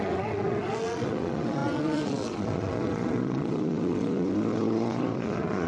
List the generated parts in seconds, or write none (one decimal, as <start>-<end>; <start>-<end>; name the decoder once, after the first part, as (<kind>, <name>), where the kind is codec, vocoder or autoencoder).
0.0-5.7 (vocoder, Vocos)